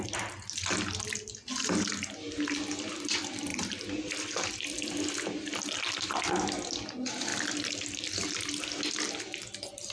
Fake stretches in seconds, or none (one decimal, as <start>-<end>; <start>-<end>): 3.5-4.1